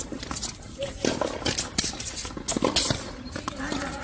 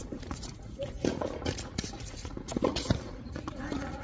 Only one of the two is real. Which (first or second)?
first